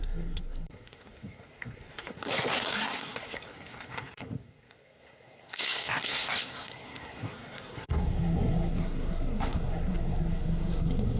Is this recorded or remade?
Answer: remade